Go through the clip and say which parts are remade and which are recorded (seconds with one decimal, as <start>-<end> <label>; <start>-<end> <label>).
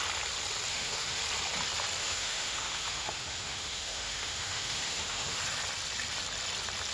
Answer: 0.0-0.7 recorded; 0.7-1.2 remade; 1.2-2.0 recorded; 2.0-5.4 remade; 5.4-6.9 recorded